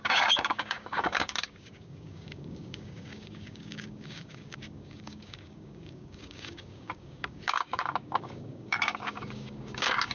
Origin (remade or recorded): remade